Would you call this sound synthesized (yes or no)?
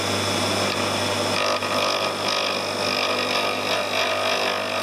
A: no